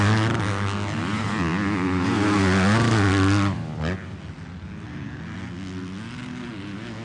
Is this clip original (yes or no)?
yes